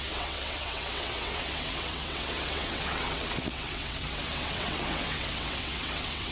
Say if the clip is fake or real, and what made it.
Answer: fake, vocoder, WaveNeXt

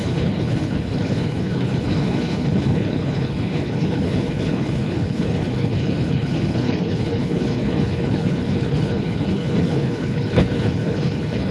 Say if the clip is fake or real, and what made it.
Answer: fake, codec, HILCodec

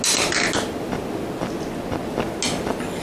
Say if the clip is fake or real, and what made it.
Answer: real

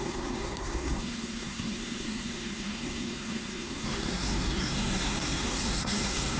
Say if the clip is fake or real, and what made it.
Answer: fake, codec, SNAC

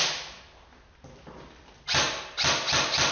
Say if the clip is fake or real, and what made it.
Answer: real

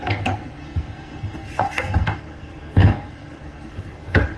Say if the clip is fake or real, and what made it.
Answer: fake, codec, SNAC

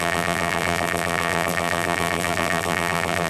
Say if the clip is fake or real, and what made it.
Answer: fake, vocoder, BigVGAN v2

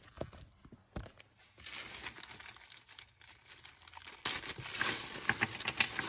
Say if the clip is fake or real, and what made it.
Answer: real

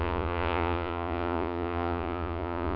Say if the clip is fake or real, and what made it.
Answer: fake, vocoder, Vocos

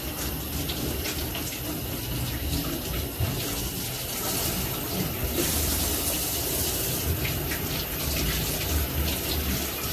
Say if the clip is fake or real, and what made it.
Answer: real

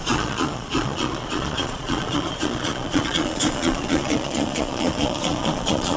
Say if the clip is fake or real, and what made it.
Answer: fake, vocoder, Vocos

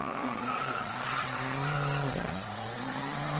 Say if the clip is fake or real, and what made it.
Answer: fake, vocoder, Vocos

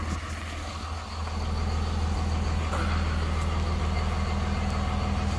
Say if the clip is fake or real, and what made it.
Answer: real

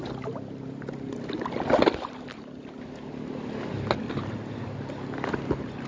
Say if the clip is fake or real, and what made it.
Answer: real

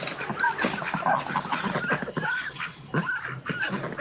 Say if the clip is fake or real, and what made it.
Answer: real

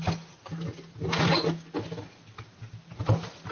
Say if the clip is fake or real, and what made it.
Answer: real